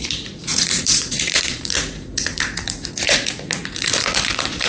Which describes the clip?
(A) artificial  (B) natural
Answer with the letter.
A